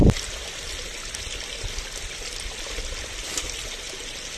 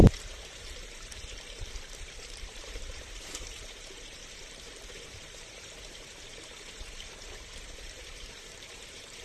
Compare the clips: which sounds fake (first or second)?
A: second